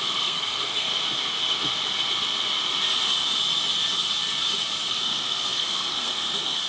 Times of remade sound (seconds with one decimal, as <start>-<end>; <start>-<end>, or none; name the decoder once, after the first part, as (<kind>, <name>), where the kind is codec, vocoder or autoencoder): 0.0-0.9 (codec, SNAC); 4.9-6.7